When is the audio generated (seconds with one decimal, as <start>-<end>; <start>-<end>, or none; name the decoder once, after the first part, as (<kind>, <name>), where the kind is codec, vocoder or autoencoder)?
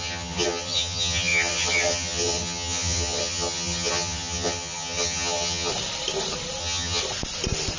0.0-5.7 (vocoder, HiFi-GAN); 6.6-7.0